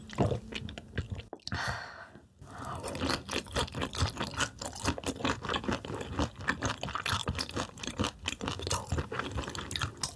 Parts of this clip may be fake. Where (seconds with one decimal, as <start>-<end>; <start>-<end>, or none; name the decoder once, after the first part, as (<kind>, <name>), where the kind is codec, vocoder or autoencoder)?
7.2-8.0 (vocoder, BigVGAN v2)